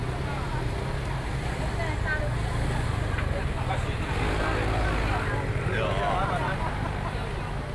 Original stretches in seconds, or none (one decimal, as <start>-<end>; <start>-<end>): 0.0-7.7